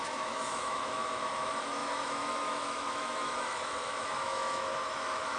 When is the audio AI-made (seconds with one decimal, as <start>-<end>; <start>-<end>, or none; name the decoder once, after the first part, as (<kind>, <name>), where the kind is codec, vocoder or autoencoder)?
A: 0.0-5.4 (autoencoder, DAC-VAE)